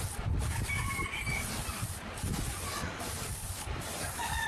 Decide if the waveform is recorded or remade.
recorded